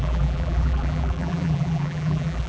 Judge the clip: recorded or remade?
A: remade